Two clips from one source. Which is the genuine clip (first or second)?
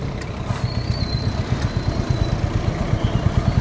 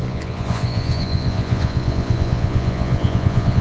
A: first